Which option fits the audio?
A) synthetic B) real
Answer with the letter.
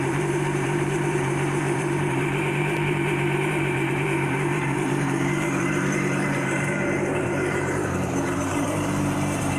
A